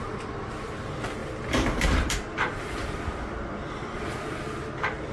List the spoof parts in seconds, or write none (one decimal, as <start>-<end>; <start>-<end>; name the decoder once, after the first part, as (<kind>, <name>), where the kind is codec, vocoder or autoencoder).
0.0-5.1 (vocoder, BigVGAN v2)